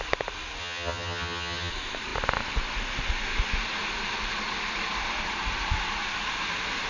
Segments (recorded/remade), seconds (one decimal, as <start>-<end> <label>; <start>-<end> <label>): 0.0-0.6 recorded; 0.6-1.7 remade; 1.7-6.9 recorded